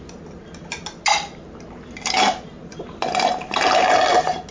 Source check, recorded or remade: recorded